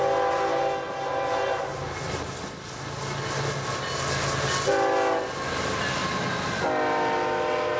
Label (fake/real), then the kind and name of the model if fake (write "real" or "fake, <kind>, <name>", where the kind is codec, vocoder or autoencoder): real